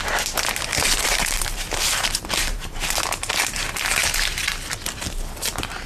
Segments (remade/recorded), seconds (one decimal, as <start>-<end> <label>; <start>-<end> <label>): 0.0-1.0 recorded; 1.0-3.0 remade; 3.0-5.9 recorded